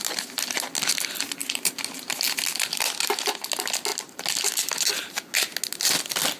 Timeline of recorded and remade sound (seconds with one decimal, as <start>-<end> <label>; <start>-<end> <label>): 0.0-1.4 recorded; 1.4-2.1 remade; 2.1-6.4 recorded